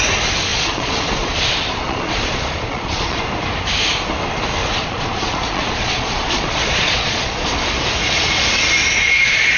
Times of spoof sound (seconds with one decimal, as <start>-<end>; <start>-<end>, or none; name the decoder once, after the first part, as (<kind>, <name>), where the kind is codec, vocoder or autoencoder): 0.5-3.2 (vocoder, Vocos); 4.6-7.5